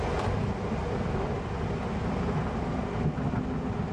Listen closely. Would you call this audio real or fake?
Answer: real